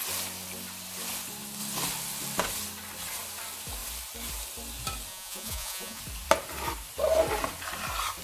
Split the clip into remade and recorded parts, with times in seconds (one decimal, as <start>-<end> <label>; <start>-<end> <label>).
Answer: 0.0-5.1 recorded; 5.1-6.0 remade; 6.0-8.2 recorded